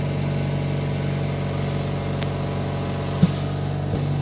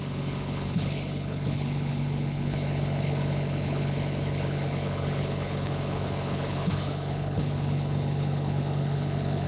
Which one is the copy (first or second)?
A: second